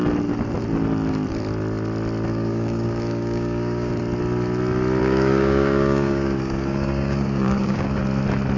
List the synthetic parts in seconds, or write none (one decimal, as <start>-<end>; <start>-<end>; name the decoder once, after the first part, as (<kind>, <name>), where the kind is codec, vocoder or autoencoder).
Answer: 2.3-3.9 (codec, DAC); 5.0-8.0